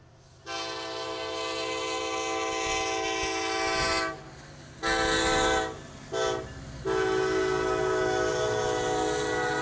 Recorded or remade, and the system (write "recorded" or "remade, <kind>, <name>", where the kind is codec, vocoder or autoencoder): recorded